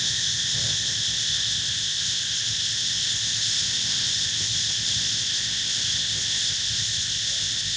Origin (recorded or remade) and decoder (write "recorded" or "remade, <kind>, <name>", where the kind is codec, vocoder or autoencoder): remade, codec, ZipCodec